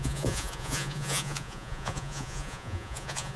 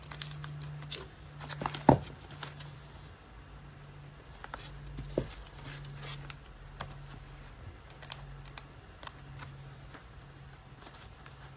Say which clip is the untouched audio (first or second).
second